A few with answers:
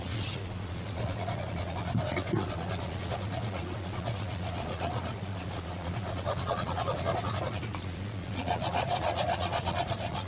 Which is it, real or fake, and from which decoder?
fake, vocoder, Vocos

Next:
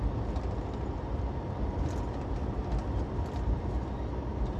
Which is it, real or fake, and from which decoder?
real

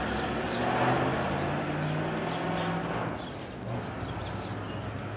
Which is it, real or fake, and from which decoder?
real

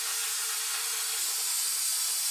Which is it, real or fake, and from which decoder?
real